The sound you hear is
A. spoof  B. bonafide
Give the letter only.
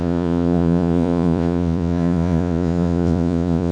A